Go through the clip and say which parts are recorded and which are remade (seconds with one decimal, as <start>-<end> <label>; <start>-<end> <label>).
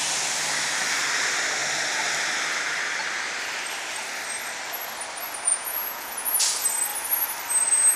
0.0-5.5 recorded; 5.5-6.4 remade; 6.4-8.0 recorded